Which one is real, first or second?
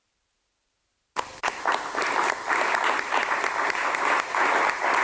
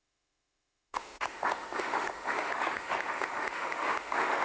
first